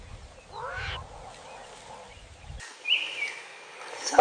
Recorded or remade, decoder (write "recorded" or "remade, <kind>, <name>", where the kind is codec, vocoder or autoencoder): recorded